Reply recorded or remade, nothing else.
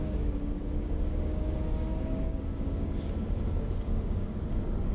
remade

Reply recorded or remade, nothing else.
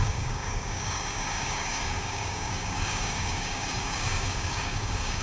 remade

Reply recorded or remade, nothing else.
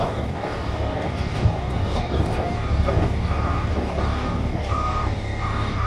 remade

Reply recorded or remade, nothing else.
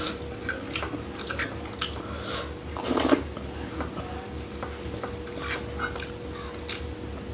recorded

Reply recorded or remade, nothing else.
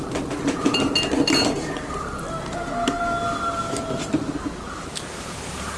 recorded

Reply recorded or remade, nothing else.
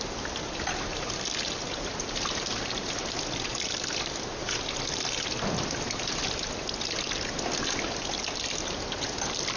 recorded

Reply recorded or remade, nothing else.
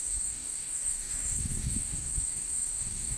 remade